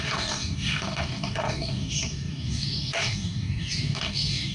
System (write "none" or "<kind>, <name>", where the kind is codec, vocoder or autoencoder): codec, DAC